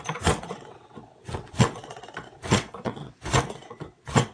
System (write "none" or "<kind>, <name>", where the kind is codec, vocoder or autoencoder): vocoder, WaveNeXt